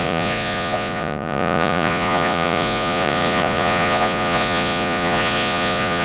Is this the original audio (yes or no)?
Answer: no